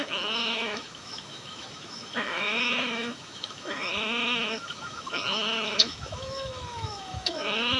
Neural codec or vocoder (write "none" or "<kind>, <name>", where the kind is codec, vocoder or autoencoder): autoencoder, DAC-VAE